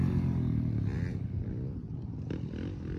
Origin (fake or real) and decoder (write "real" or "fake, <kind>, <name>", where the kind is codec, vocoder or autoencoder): real